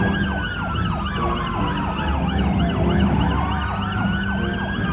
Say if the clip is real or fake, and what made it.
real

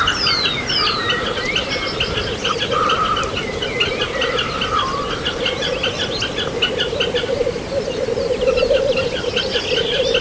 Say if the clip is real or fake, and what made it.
real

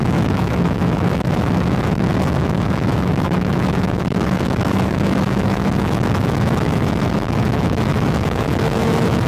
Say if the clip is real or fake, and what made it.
fake, autoencoder, DAC-VAE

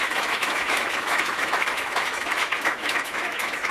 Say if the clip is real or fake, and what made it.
fake, autoencoder, DAC-VAE